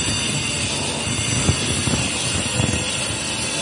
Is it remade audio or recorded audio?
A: recorded